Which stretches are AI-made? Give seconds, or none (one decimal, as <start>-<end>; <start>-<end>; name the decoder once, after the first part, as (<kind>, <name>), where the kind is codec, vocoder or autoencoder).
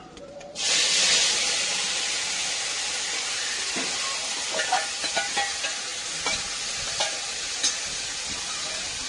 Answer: none